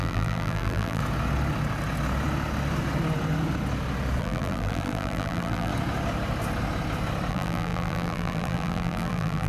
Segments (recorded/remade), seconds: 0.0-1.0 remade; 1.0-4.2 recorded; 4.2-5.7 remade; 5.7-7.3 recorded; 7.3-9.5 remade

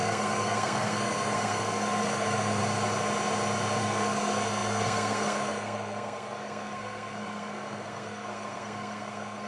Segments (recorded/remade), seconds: 0.0-2.6 remade; 2.6-3.8 recorded; 3.8-9.5 remade

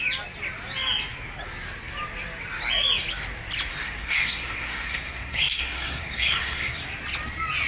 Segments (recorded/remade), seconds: 0.0-3.7 recorded; 3.7-6.8 remade; 6.8-7.7 recorded

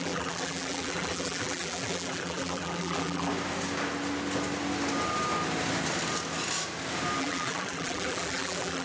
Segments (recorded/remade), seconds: 0.0-3.3 remade; 3.3-7.2 recorded; 7.2-8.8 remade

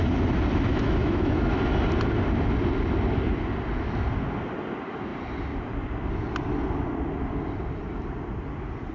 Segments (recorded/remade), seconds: 0.0-0.7 recorded; 0.7-1.6 remade; 1.6-8.9 recorded

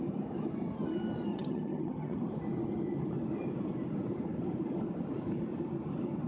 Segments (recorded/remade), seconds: 0.0-1.3 recorded; 1.3-2.2 remade; 2.2-6.3 recorded

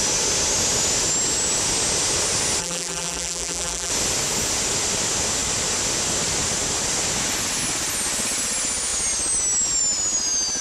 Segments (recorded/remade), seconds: 0.0-2.6 recorded; 2.6-3.9 remade; 3.9-10.6 recorded

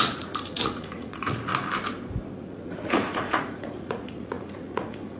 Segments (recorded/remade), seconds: 0.0-1.5 remade; 1.5-2.4 recorded; 2.4-5.2 remade